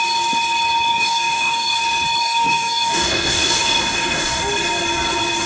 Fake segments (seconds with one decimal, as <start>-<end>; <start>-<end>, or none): 0.9-1.8; 2.2-4.4